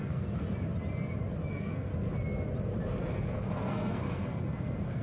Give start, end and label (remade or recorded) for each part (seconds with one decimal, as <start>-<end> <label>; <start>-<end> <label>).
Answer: 0.0-0.4 remade; 0.4-1.5 recorded; 1.5-1.9 remade; 1.9-3.1 recorded; 3.1-5.0 remade